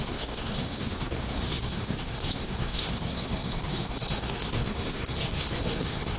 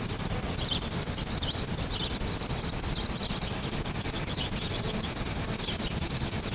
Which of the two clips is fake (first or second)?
first